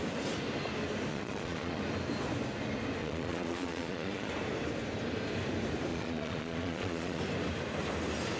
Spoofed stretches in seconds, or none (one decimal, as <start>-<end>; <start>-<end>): 1.1-1.8; 3.0-4.3; 5.9-7.2